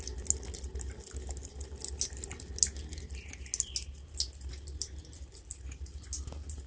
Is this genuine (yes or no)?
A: yes